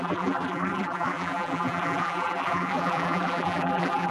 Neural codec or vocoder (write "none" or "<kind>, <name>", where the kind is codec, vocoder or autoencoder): vocoder, BigVGAN v2